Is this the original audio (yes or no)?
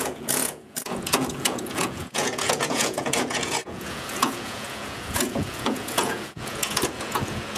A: no